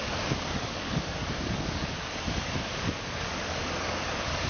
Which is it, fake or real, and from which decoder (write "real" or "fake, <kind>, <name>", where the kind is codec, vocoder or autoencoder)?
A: fake, codec, DAC